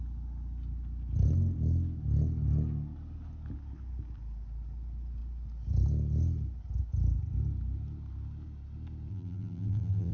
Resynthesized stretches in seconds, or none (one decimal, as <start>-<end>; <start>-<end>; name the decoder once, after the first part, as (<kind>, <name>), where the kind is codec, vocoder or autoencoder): 9.1-10.1 (vocoder, BigVGAN v2)